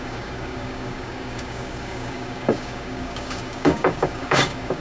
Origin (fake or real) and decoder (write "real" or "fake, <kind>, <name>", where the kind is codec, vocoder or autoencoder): fake, codec, DAC